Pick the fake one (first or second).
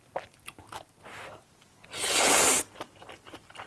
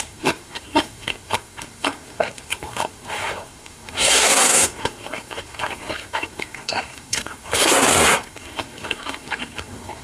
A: second